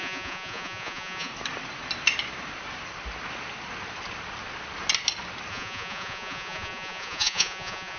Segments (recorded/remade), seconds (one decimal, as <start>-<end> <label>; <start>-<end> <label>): 0.0-1.3 remade; 1.3-5.5 recorded; 5.5-8.0 remade